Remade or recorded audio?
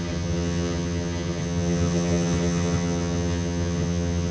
remade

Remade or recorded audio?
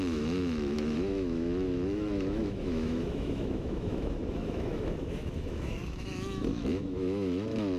remade